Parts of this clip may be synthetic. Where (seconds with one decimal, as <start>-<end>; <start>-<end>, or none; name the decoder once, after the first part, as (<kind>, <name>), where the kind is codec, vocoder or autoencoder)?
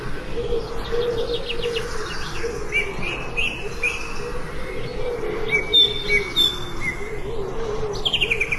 none